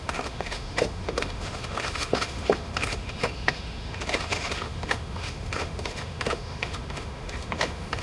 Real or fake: fake